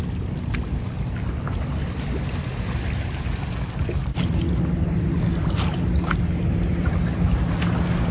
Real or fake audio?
real